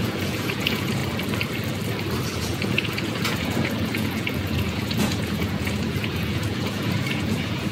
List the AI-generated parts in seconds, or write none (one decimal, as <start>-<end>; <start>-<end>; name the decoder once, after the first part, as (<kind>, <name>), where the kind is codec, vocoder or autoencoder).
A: 0.0-1.0 (vocoder, Vocos); 2.3-7.7

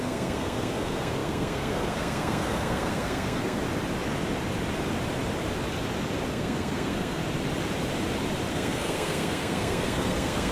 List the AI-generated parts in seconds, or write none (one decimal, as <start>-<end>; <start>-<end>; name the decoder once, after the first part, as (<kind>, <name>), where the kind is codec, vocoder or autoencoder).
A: 0.0-3.6 (codec, SNAC); 6.3-7.2; 8.5-10.5